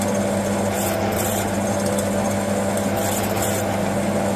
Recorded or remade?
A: recorded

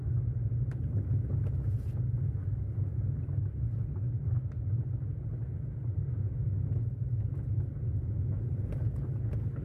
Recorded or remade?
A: recorded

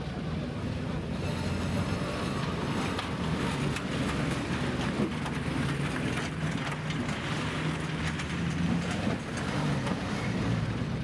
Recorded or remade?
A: recorded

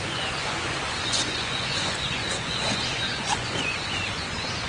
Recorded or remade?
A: remade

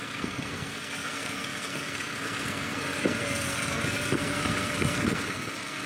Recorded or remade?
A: remade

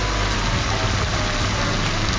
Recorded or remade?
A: recorded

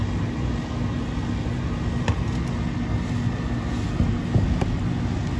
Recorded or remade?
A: recorded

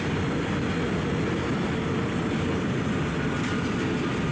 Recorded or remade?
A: recorded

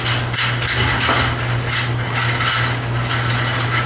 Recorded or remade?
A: recorded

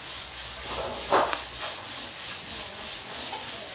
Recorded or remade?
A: remade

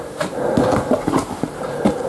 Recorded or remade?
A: recorded